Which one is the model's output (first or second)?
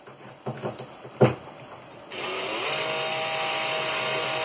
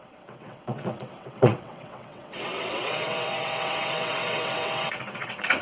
second